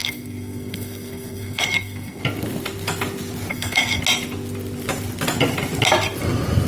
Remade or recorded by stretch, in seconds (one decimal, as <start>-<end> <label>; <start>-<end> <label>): 0.0-2.2 remade; 2.2-3.5 recorded; 3.5-4.0 remade; 4.0-6.7 recorded